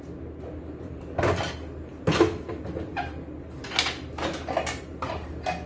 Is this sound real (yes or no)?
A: yes